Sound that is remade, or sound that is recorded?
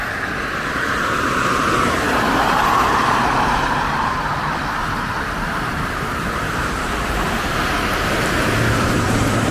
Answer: remade